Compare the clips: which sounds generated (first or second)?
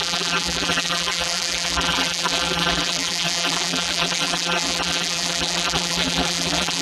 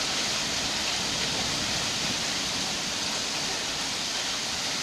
first